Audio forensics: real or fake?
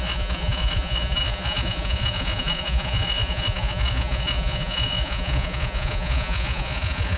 fake